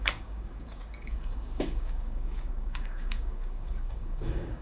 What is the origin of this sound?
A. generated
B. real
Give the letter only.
A